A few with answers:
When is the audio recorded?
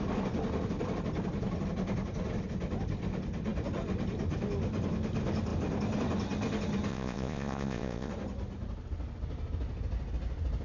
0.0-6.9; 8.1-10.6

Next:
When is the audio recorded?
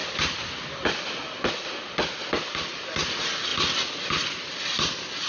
0.0-5.3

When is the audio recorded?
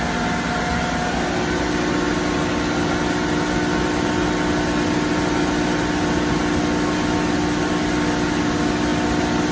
0.0-9.5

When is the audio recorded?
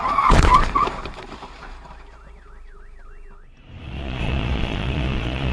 0.5-3.8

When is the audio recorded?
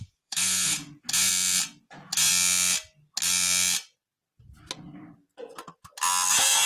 1.3-1.8; 2.3-6.3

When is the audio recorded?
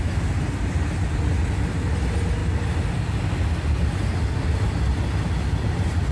0.0-6.1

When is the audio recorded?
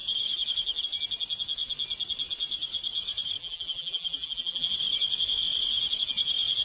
0.0-3.4; 4.7-6.6